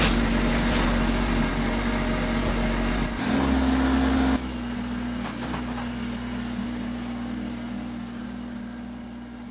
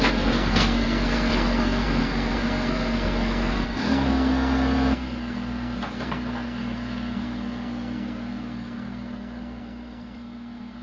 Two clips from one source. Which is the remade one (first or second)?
second